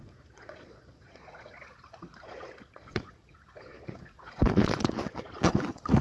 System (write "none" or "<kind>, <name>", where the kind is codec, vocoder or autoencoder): vocoder, Vocos